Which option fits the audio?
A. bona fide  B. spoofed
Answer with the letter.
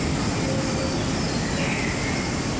A